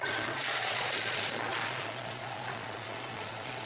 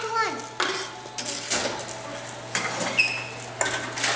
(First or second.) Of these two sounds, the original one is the second